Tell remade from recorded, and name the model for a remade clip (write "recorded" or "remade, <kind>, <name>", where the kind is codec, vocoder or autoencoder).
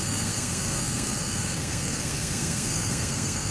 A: remade, codec, SNAC